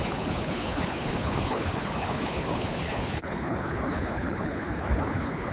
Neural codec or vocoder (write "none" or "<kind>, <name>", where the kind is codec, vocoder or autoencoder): codec, HILCodec